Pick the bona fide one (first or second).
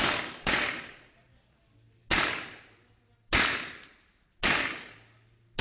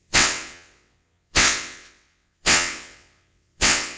first